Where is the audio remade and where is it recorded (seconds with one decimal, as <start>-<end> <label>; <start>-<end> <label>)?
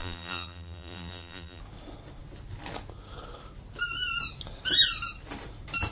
0.0-1.6 remade; 1.6-5.9 recorded